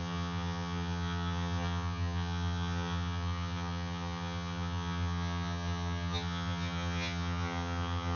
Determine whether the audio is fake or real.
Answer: fake